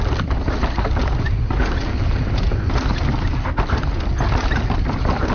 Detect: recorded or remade recorded